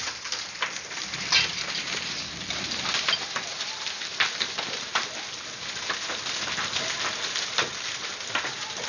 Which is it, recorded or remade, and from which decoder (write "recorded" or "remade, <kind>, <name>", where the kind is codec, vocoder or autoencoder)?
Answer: recorded